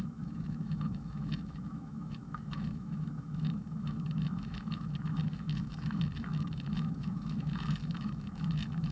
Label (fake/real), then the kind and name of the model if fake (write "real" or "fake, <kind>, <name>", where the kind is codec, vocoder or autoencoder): fake, autoencoder, DAC-VAE